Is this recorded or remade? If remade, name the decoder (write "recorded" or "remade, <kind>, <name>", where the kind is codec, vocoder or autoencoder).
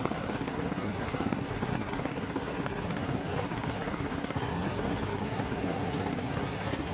remade, codec, SNAC